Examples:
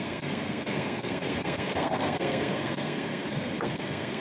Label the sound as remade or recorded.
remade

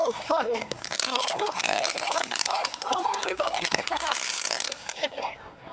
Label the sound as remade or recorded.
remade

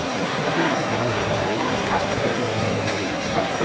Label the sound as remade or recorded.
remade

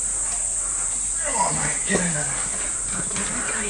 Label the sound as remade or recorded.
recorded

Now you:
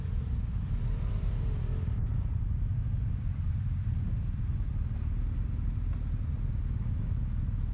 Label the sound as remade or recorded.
recorded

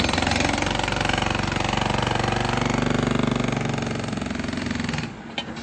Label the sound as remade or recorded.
recorded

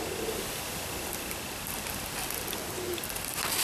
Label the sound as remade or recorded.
recorded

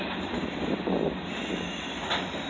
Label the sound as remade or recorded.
recorded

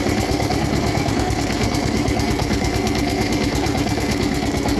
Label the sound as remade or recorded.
remade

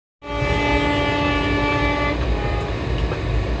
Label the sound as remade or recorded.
recorded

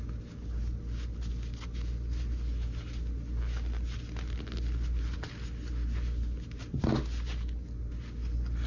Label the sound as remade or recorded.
recorded